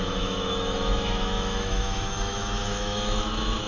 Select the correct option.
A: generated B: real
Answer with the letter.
A